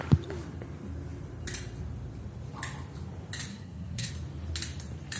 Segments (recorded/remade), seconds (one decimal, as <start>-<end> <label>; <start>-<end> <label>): 0.0-3.5 recorded; 3.5-4.1 remade; 4.1-5.2 recorded